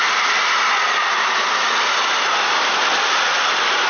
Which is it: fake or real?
real